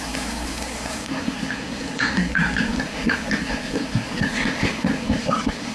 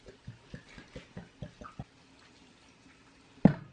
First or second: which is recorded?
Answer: second